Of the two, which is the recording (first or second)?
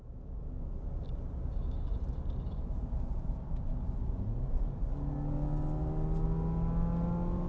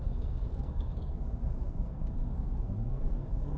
first